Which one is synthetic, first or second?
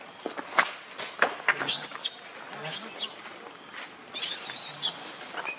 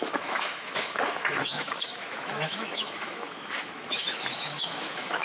second